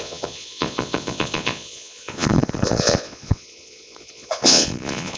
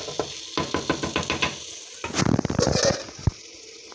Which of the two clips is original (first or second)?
second